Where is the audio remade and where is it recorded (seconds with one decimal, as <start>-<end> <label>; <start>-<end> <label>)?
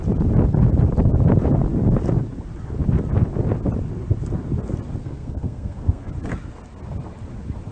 0.0-5.0 recorded; 5.0-6.1 remade; 6.1-7.7 recorded